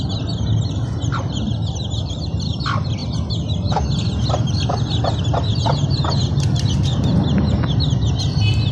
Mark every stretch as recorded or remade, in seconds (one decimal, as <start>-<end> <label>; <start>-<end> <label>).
0.0-8.7 recorded